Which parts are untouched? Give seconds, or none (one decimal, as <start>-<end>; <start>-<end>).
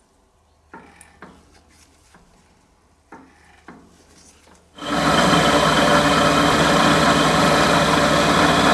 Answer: 0.0-8.7